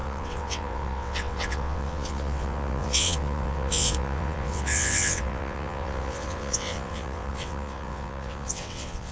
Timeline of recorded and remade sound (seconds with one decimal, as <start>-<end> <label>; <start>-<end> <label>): 0.0-9.1 remade